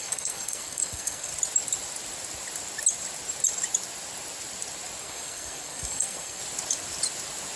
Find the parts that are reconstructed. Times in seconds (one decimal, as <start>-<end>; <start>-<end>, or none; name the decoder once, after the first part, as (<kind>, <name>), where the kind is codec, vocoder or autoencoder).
0.0-1.3 (codec, SNAC); 5.0-6.4